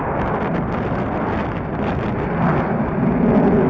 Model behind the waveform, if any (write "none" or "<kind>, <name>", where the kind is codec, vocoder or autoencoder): none